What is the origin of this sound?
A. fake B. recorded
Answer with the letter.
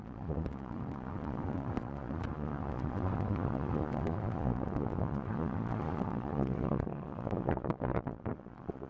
A